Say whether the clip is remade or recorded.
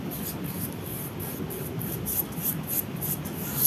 recorded